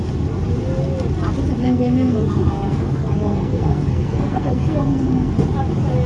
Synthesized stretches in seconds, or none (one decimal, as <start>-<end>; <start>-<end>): 1.6-5.3